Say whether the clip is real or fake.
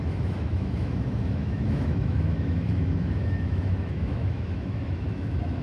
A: fake